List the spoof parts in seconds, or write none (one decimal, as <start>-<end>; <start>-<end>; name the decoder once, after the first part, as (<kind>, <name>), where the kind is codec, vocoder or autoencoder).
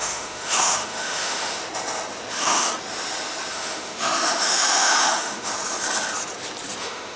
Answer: 0.0-1.6 (autoencoder, DAC-VAE); 2.3-2.7; 3.5-5.5; 6.8-7.2